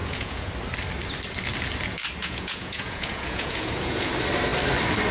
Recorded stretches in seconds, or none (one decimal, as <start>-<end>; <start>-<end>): 0.5-2.2; 4.1-5.1